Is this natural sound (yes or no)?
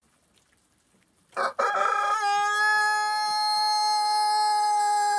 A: yes